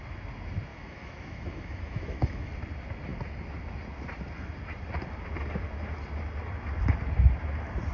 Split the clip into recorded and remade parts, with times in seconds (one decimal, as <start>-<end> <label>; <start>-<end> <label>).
0.0-0.7 recorded; 0.7-2.5 remade; 2.5-7.9 recorded